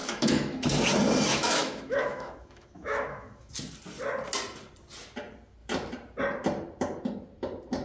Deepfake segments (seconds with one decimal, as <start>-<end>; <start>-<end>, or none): 0.0-0.7; 1.3-3.5